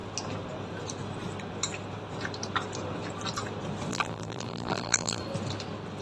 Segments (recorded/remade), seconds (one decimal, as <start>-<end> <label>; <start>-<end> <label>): 0.0-3.9 recorded; 3.9-5.2 remade; 5.2-6.0 recorded